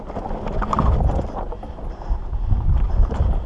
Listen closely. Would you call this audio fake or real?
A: real